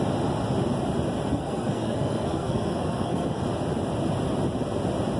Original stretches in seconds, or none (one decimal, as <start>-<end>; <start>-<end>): 0.0-1.3; 3.4-5.2